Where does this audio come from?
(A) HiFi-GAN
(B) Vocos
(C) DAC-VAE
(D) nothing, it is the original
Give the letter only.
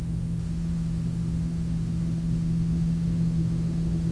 C